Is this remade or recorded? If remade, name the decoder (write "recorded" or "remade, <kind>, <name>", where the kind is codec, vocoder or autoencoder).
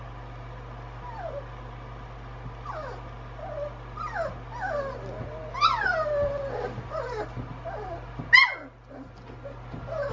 recorded